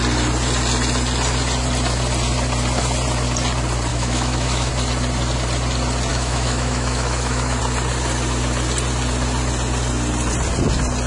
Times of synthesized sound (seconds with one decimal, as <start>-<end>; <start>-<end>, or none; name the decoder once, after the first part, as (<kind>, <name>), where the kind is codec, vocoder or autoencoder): 3.9-4.7 (autoencoder, DAC-VAE); 6.1-7.6